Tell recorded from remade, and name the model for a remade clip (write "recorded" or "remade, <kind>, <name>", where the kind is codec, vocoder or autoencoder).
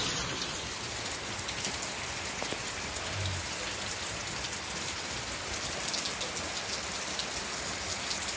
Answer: recorded